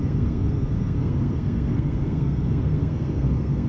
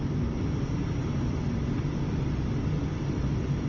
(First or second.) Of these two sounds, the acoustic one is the second